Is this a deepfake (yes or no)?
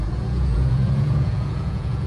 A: yes